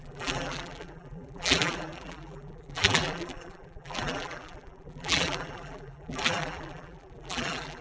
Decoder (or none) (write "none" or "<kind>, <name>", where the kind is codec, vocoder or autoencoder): vocoder, BigVGAN v2